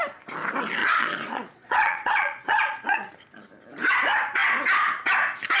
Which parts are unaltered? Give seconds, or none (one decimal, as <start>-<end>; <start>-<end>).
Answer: 0.0-0.8; 3.1-5.6